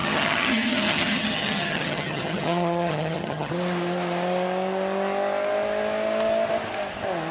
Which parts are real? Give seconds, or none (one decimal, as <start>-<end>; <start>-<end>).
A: 3.5-7.3

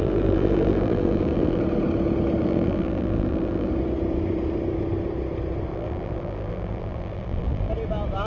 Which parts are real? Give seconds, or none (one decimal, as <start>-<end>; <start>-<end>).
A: 1.6-2.4; 3.7-5.7; 7.7-8.3

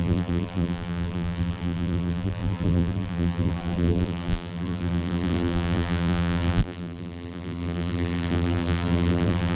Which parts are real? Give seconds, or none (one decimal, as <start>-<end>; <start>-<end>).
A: none

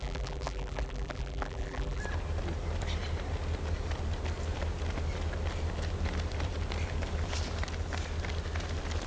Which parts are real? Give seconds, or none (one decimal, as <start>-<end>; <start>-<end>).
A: 2.0-9.1

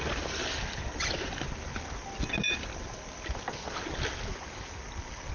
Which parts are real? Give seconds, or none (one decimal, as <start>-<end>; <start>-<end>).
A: 0.0-5.3

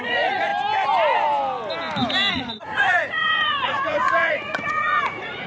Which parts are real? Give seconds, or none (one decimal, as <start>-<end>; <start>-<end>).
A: 0.5-2.3

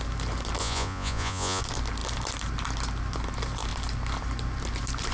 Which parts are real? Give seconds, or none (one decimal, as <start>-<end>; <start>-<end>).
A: 0.0-0.6; 1.6-5.1

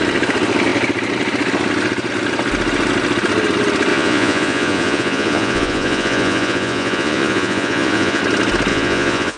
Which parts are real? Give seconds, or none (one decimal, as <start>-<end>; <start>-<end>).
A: 0.0-3.9; 8.2-8.7